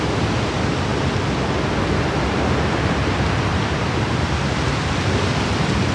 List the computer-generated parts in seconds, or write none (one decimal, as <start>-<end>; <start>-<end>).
3.5-4.9